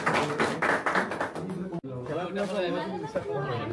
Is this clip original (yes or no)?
yes